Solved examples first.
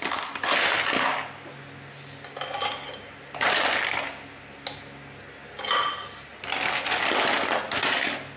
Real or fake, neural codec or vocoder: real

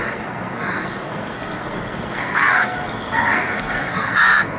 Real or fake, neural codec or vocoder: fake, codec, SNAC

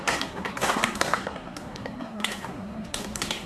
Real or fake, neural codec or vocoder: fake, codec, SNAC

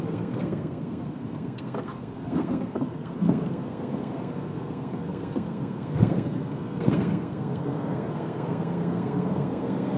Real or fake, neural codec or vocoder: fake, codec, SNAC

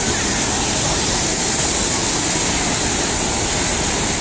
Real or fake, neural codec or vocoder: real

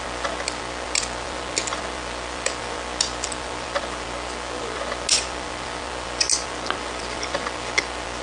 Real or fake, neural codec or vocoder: real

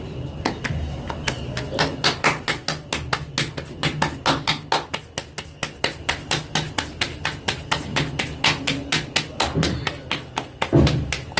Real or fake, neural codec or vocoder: real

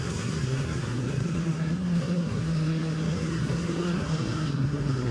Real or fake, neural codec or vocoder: fake, codec, SNAC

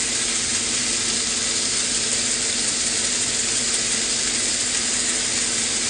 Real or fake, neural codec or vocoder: real